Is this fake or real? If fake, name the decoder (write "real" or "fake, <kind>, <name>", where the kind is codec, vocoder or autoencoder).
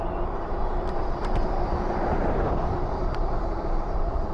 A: fake, vocoder, BigVGAN v2